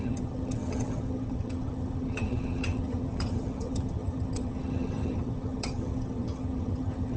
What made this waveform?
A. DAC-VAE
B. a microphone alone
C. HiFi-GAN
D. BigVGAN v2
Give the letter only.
C